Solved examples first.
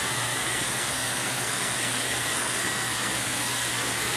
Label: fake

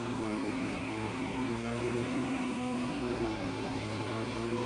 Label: fake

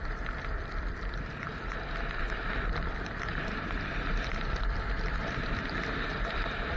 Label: fake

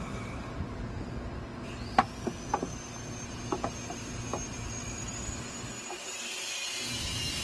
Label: real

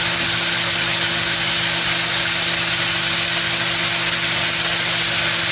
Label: real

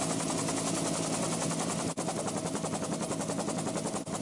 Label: real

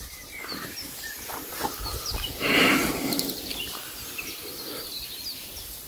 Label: real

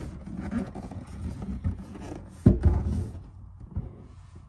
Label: fake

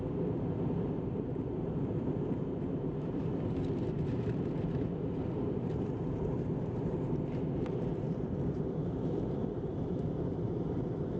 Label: fake